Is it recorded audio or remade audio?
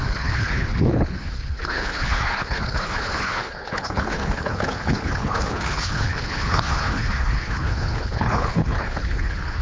remade